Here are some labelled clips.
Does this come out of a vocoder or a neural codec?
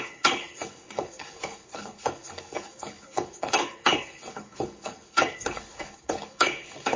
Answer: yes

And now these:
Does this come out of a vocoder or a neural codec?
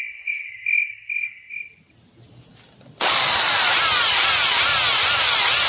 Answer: no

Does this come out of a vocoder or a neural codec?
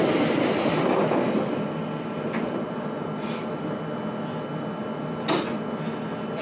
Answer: no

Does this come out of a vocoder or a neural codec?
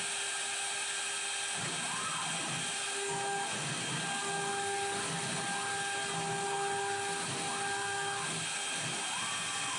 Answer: no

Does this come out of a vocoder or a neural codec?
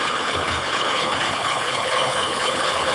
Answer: yes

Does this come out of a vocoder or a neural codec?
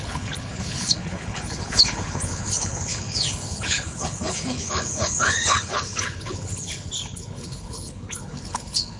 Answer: yes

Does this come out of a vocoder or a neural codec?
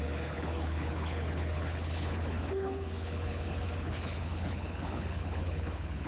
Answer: yes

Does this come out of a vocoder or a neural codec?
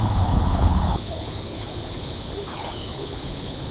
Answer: yes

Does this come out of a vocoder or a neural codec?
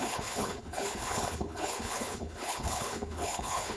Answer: yes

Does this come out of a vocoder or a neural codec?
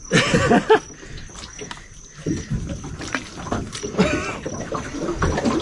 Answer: no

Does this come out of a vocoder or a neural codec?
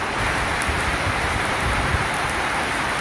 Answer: no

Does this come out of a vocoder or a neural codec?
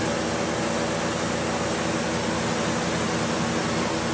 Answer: no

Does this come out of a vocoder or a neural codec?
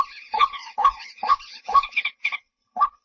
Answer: yes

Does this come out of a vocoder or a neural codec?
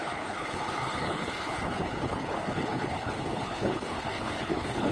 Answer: yes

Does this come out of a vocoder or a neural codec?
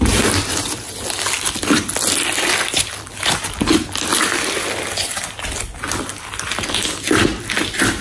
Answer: no